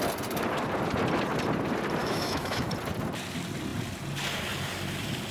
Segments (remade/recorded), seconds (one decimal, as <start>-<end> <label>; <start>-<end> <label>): 0.0-2.0 recorded; 2.0-2.7 remade; 2.7-5.3 recorded